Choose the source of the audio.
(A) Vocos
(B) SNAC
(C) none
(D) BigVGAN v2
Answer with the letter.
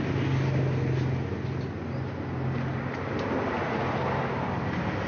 C